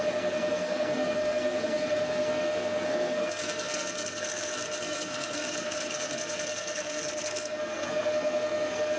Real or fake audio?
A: fake